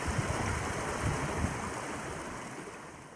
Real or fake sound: real